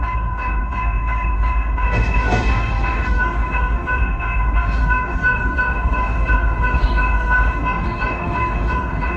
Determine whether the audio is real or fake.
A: fake